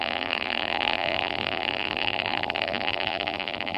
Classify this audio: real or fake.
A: fake